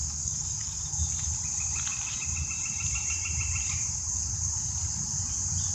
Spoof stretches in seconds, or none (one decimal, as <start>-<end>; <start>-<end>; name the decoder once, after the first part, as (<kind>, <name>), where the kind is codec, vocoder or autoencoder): 0.0-0.8 (codec, DAC)

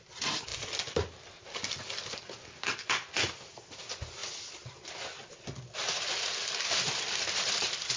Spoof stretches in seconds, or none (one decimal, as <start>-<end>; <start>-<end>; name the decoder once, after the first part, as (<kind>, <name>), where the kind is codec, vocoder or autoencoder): none

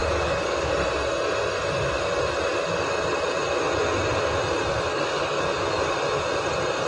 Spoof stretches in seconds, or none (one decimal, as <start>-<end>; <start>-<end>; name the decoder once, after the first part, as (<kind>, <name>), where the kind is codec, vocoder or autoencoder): 0.0-0.7 (codec, DAC); 4.9-5.4

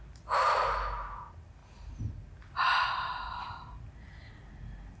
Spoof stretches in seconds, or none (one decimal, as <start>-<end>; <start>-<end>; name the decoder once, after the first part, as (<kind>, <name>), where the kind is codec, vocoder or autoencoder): none

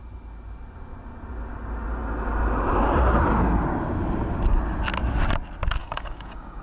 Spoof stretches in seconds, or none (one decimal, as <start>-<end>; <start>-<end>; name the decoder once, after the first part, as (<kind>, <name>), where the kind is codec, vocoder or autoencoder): 5.8-6.6 (codec, DAC)